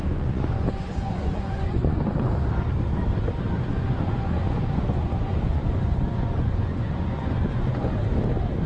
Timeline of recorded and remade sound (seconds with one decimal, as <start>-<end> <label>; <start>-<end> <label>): 0.0-2.3 remade; 2.3-3.7 recorded; 3.7-7.9 remade; 7.9-8.7 recorded